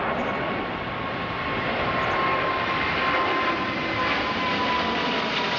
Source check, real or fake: real